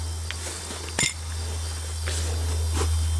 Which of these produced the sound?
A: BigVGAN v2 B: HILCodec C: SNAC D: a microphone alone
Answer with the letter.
D